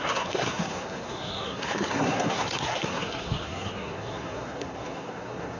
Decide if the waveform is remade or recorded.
remade